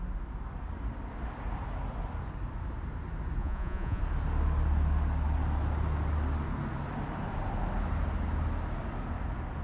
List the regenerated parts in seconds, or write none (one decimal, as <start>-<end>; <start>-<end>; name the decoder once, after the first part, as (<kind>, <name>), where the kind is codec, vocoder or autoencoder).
3.4-4.0 (vocoder, Vocos)